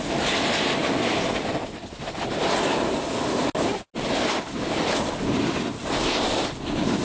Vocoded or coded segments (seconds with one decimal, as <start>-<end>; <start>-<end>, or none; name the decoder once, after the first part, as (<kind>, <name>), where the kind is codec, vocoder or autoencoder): none